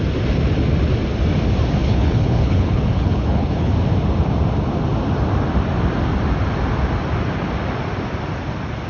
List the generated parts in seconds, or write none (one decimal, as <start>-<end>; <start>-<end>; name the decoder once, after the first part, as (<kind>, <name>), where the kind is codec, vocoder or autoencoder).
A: 1.8-3.7 (codec, HILCodec)